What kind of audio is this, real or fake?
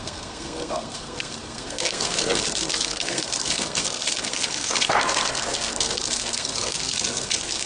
fake